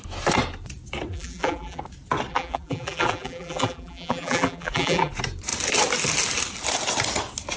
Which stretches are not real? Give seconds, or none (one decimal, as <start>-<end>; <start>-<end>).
1.1-1.8; 2.3-5.1